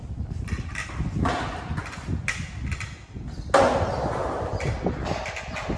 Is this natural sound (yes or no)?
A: yes